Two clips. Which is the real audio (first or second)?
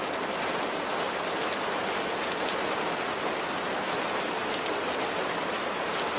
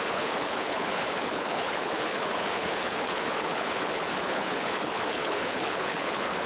first